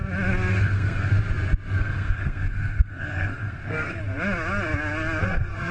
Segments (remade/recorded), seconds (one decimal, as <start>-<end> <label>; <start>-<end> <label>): 0.0-0.5 recorded; 0.5-1.1 remade; 1.1-1.8 recorded; 1.8-4.0 remade; 4.0-5.2 recorded; 5.2-5.7 remade